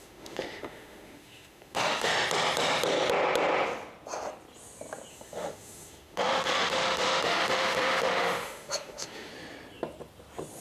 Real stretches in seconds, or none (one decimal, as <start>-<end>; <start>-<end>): 2.1-5.1; 9.3-10.6

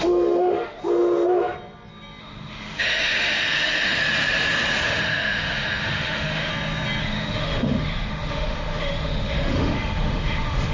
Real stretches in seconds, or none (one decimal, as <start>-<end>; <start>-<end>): 0.8-2.2; 4.0-4.8; 6.5-7.0

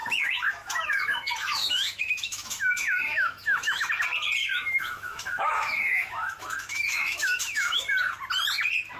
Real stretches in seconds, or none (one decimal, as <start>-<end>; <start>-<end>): 3.9-4.4; 7.8-9.0

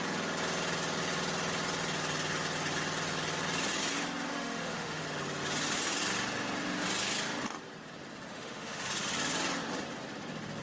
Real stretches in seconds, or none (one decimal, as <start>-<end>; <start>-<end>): 0.0-4.3; 5.0-8.3; 8.9-10.6

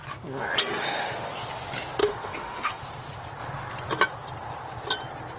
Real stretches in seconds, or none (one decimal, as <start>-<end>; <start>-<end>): 0.0-0.8; 1.3-2.0; 2.8-5.4

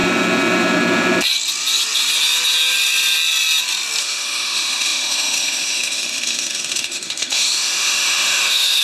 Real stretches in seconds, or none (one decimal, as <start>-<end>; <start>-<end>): 0.0-4.0

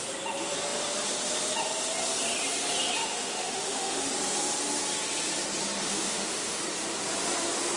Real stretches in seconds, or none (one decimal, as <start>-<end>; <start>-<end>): 0.0-3.0; 4.1-5.9; 6.6-7.8

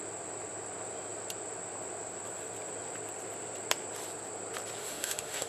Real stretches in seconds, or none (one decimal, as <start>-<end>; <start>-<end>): 0.0-4.8